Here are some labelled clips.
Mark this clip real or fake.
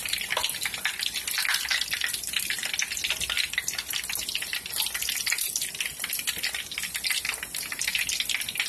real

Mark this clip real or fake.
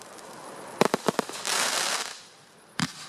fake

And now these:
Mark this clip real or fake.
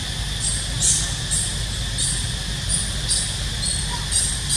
real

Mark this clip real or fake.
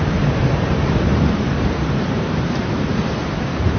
fake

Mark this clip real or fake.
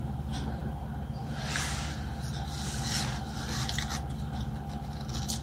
real